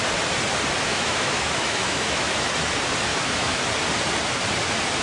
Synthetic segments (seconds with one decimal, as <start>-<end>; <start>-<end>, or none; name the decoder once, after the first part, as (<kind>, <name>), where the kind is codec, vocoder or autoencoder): 0.9-2.5 (autoencoder, DAC-VAE); 3.1-3.6